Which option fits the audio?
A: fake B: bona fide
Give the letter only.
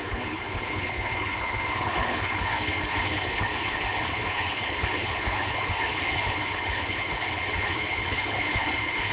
A